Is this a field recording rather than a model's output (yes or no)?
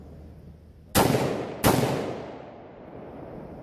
yes